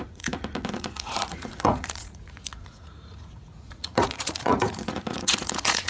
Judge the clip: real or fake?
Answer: fake